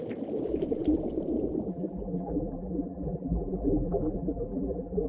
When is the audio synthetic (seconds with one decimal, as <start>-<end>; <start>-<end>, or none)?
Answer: 1.7-5.1